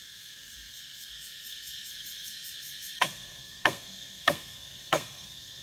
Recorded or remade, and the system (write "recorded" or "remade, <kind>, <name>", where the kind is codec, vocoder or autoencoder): remade, codec, SNAC